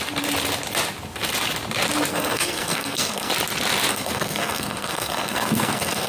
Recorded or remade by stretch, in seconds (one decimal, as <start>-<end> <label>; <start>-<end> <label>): 0.0-2.1 recorded; 2.1-3.3 remade; 3.3-3.9 recorded; 3.9-6.1 remade